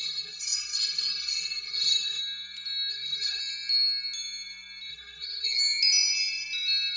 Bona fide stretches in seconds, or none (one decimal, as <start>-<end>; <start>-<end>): 2.2-2.9; 3.4-4.9; 5.6-7.0